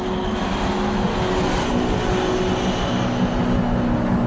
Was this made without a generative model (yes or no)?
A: yes